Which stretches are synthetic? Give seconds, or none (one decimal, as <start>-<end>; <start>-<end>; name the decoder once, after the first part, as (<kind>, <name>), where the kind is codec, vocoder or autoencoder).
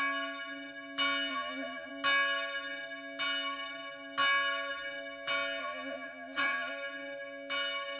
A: 1.3-1.9 (vocoder, Vocos); 5.6-6.7